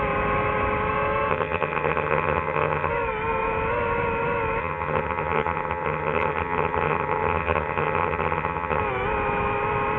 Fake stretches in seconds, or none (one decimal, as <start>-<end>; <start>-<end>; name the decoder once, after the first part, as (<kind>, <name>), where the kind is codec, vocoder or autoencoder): 1.3-2.9 (vocoder, HiFi-GAN); 4.6-8.8